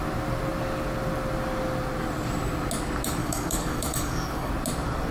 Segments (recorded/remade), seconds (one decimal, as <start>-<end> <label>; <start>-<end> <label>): 0.0-3.2 recorded; 3.2-4.5 remade; 4.5-5.1 recorded